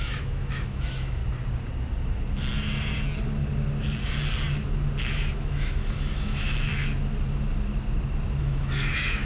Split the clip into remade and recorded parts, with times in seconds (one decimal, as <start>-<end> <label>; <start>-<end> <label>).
0.0-1.2 remade; 1.2-5.0 recorded; 5.0-6.7 remade; 6.7-8.4 recorded; 8.4-9.2 remade